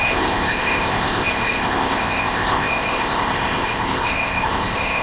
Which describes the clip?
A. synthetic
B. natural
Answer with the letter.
A